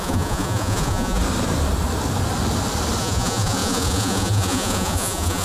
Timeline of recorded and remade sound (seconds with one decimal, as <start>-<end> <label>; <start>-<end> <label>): 0.0-1.2 remade; 1.2-3.0 recorded; 3.0-5.4 remade